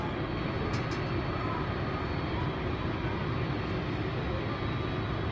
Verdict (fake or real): real